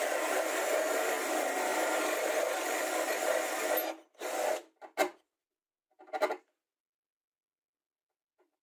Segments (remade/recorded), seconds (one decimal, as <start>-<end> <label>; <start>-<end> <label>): 0.0-8.6 recorded